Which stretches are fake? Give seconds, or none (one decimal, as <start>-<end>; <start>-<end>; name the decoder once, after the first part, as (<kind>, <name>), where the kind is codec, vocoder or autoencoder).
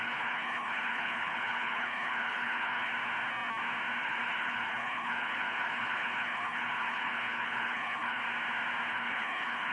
0.0-2.9 (codec, HILCodec); 4.0-8.2; 8.9-9.7